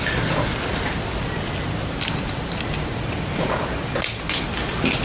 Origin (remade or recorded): recorded